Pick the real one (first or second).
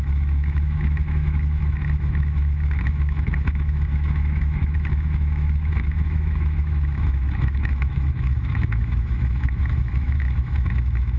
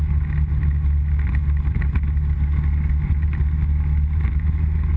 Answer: second